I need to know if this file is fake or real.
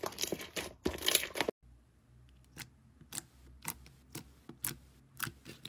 real